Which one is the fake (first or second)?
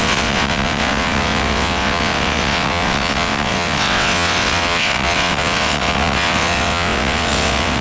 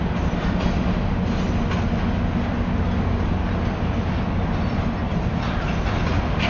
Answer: first